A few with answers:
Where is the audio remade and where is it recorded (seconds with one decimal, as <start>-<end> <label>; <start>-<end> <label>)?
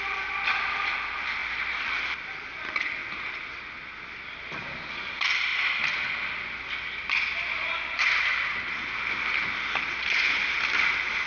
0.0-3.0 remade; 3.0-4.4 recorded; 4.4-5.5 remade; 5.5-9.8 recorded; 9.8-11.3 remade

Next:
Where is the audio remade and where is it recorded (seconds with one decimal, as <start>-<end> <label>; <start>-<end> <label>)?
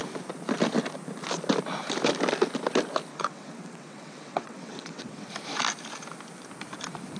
0.0-3.1 recorded; 3.1-5.3 remade; 5.3-7.2 recorded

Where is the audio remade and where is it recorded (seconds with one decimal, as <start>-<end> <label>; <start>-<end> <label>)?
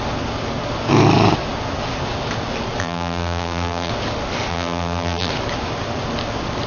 0.0-2.8 recorded; 2.8-3.9 remade; 3.9-4.5 recorded; 4.5-5.3 remade; 5.3-6.7 recorded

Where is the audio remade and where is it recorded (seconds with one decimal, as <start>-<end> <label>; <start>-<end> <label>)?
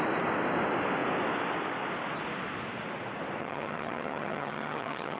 0.0-3.4 recorded; 3.4-5.2 remade